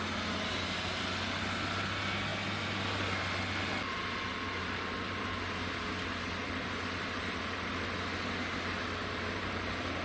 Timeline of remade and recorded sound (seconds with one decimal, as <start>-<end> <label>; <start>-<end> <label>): 0.0-4.6 recorded; 4.6-5.7 remade; 5.7-9.0 recorded; 9.0-10.0 remade